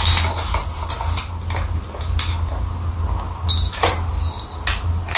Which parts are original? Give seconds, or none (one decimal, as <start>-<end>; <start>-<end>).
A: 0.0-5.2